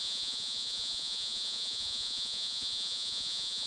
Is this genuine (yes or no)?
no